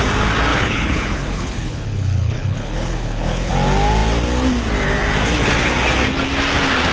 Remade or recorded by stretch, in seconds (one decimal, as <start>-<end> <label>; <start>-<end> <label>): 0.0-0.5 recorded; 0.5-3.5 remade; 3.5-6.9 recorded